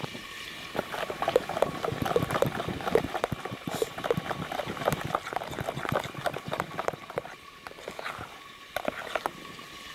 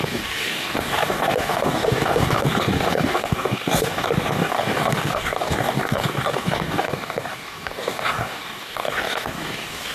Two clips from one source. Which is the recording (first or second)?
first